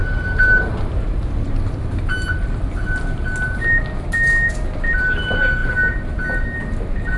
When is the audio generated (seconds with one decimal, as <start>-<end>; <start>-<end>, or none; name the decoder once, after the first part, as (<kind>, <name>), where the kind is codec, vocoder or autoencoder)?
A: none